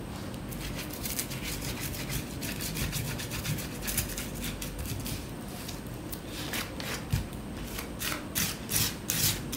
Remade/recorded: recorded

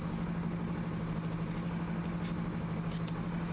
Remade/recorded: recorded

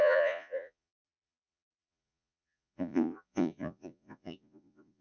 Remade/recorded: remade